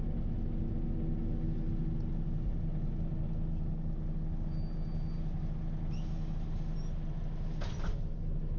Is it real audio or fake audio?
real